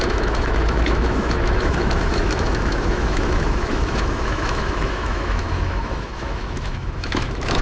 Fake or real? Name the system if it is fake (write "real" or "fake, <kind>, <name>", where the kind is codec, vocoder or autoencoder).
fake, autoencoder, DAC-VAE